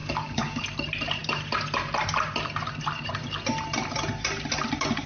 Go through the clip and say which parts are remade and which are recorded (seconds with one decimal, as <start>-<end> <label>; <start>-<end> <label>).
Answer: 0.0-0.6 remade; 0.6-5.1 recorded